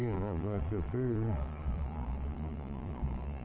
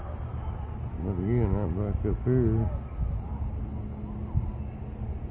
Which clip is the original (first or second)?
second